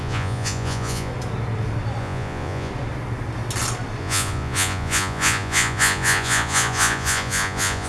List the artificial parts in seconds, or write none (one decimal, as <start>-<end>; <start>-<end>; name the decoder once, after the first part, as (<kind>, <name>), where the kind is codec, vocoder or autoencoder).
0.0-1.1 (vocoder, Vocos); 2.0-2.7; 4.0-7.9

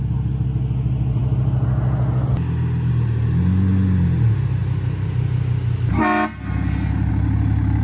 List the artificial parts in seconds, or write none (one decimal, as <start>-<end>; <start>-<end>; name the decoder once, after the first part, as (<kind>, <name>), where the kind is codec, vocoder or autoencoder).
none

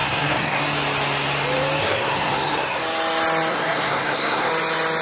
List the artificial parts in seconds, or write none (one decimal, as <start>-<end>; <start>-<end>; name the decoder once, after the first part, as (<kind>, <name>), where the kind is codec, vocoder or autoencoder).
0.0-0.6 (codec, SNAC); 1.8-2.8; 3.5-4.5

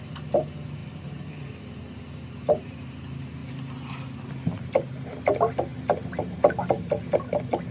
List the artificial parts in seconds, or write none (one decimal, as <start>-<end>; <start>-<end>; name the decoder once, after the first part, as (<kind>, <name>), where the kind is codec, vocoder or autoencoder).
0.8-1.5 (vocoder, BigVGAN v2)

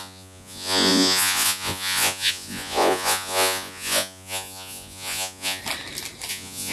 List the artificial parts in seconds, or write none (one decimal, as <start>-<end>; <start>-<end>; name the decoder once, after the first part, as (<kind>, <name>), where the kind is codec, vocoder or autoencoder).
0.0-5.6 (vocoder, Vocos); 6.3-6.7

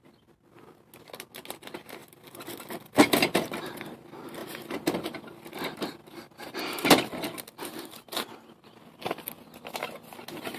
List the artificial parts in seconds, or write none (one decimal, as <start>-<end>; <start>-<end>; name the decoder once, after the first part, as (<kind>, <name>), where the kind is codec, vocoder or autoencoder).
4.4-5.4 (vocoder, BigVGAN v2)

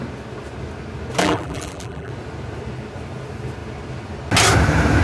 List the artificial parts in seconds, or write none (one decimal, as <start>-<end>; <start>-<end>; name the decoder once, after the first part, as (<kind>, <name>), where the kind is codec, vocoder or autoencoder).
1.2-2.1 (vocoder, BigVGAN v2)

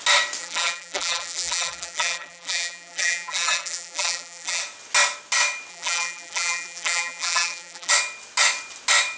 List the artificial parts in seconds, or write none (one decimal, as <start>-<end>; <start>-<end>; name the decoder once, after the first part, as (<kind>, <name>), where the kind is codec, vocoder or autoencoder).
0.4-4.6 (vocoder, BigVGAN v2); 5.7-7.9